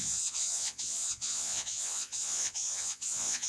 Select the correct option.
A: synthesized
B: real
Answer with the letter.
A